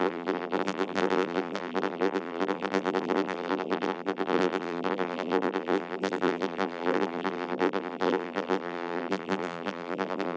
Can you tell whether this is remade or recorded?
remade